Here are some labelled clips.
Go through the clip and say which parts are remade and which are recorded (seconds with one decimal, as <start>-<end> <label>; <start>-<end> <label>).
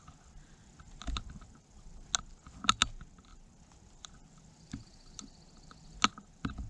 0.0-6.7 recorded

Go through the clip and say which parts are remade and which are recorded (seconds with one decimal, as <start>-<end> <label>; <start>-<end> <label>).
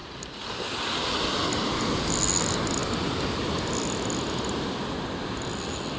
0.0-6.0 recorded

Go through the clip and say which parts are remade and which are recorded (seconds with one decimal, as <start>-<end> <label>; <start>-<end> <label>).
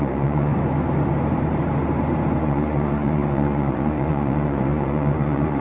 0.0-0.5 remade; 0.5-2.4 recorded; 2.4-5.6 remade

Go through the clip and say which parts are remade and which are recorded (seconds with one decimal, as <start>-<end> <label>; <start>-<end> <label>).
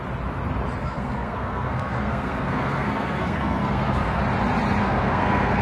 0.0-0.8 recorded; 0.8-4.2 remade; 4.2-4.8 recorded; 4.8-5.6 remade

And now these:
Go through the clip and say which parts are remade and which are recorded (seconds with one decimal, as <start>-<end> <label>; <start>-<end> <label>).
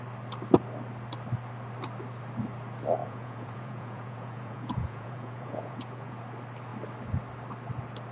0.0-3.0 recorded; 3.0-6.2 remade; 6.2-8.1 recorded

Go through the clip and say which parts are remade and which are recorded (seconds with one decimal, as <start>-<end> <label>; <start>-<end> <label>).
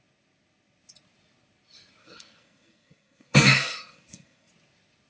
0.0-2.0 recorded; 2.0-4.5 remade; 4.5-5.1 recorded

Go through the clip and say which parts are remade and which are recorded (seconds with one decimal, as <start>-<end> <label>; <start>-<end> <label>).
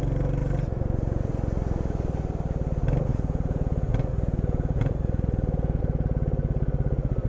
0.0-3.1 recorded; 3.1-5.8 remade; 5.8-7.3 recorded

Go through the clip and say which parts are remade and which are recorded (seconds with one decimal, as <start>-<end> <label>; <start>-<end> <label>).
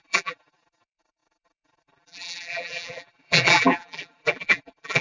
0.0-5.0 remade